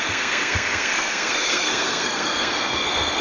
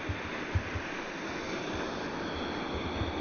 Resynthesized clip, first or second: first